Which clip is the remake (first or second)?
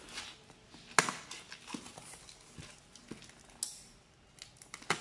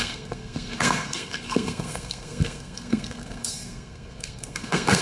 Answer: second